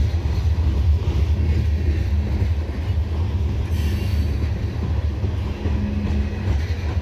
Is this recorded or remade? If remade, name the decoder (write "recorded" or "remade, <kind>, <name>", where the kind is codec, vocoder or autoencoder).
recorded